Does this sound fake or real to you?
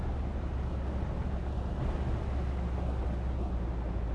real